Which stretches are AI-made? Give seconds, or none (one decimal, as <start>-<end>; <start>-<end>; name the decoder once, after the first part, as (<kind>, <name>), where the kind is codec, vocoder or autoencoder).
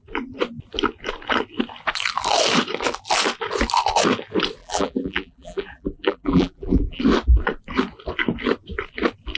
4.6-7.0 (vocoder, BigVGAN v2)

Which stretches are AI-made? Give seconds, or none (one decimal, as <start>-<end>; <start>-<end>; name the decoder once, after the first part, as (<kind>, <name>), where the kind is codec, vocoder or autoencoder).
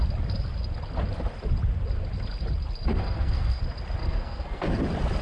2.9-3.6 (codec, SNAC); 4.0-4.8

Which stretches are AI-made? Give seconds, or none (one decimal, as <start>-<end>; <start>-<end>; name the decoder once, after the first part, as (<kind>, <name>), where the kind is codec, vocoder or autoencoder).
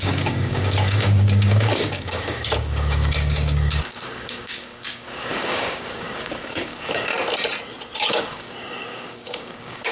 0.0-7.1 (codec, DAC); 8.0-9.9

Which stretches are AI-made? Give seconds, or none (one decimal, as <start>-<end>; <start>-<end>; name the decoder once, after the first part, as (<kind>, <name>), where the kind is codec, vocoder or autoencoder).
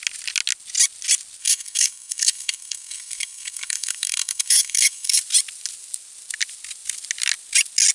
1.4-5.2 (codec, SNAC)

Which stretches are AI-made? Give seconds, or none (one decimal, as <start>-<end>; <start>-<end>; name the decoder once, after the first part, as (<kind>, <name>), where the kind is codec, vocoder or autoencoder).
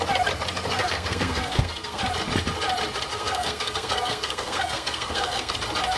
0.8-2.0 (codec, SNAC); 3.1-5.5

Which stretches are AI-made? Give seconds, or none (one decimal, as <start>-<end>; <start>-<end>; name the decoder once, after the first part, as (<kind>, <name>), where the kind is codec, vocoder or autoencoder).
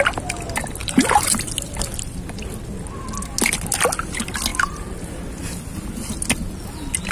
0.8-1.5 (vocoder, BigVGAN v2); 4.5-5.1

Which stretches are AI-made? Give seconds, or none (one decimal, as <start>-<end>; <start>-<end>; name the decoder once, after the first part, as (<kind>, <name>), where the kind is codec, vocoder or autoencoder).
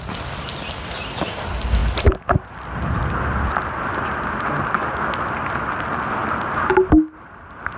none